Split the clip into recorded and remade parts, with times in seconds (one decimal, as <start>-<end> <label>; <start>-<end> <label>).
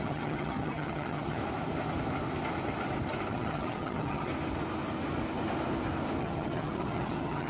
0.0-1.4 remade; 1.4-3.3 recorded; 3.3-4.3 remade; 4.3-6.2 recorded; 6.2-7.5 remade